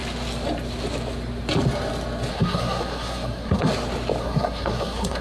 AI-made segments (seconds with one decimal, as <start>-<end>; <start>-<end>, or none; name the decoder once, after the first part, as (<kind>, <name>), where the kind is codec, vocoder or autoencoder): 2.3-3.7 (codec, SNAC); 4.2-5.2